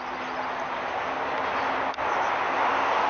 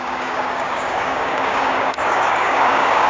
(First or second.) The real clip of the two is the first